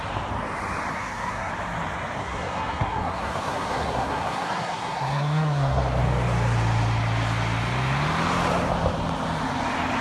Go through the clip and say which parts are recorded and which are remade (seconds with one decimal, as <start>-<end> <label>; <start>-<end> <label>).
0.0-0.9 recorded; 0.9-1.5 remade; 1.5-2.2 recorded; 2.2-5.8 remade; 5.8-10.0 recorded